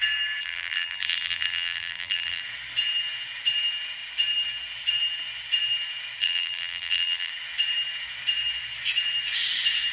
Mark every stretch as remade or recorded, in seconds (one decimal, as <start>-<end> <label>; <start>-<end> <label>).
0.0-0.4 recorded; 0.4-2.4 remade; 2.4-6.2 recorded; 6.2-7.3 remade; 7.3-9.9 recorded